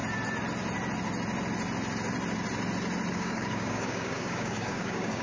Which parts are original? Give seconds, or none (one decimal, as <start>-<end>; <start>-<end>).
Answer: 0.0-3.1